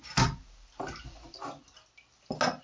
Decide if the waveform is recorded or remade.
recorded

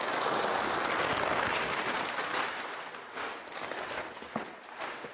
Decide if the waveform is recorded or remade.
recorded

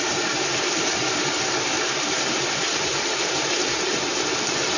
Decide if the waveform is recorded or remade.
remade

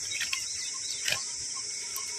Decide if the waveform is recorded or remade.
remade